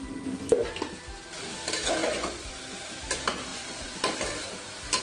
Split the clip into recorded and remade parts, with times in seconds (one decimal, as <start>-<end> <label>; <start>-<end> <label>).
0.0-2.0 recorded; 2.0-2.6 remade; 2.6-3.5 recorded; 3.5-4.0 remade; 4.0-5.0 recorded